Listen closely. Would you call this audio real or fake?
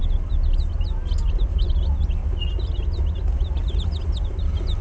real